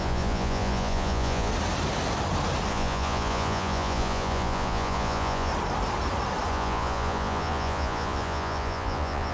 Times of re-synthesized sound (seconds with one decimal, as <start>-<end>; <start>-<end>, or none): 0.0-1.5; 2.7-5.5; 6.5-9.3